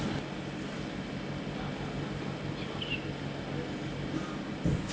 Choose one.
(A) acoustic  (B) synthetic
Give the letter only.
A